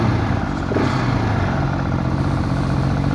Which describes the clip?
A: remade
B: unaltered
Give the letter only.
B